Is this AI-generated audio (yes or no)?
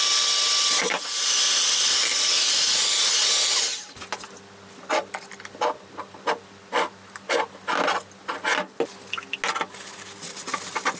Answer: no